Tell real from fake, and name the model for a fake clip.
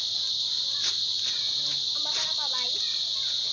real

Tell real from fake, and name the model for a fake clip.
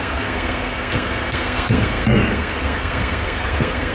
fake, codec, SNAC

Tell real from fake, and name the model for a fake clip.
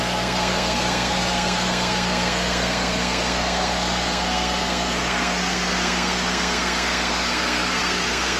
fake, codec, SNAC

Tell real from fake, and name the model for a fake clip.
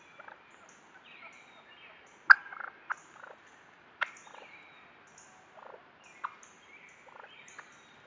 real